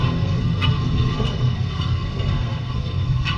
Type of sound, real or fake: fake